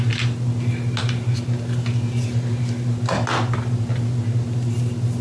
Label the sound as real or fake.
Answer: real